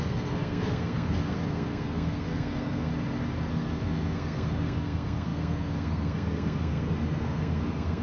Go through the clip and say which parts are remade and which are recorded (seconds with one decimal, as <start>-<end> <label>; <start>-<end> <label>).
0.0-2.9 remade; 2.9-3.5 recorded; 3.5-8.0 remade